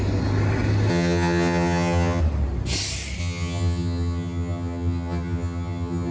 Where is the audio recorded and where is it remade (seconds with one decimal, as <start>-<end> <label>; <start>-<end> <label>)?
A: 0.0-0.9 recorded; 0.9-2.2 remade; 2.2-3.2 recorded; 3.2-6.1 remade